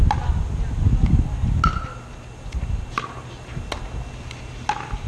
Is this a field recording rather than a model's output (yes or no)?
yes